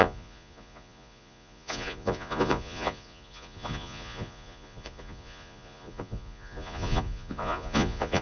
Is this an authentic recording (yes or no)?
no